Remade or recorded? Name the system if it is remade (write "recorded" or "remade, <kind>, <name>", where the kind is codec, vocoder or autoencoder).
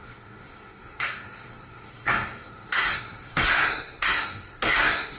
remade, codec, SNAC